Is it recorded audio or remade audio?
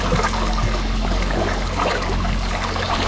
remade